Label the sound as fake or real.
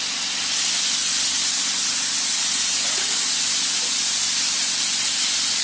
real